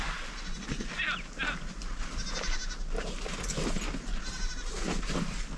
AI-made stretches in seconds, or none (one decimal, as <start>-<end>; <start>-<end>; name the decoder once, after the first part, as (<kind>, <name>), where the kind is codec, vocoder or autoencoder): none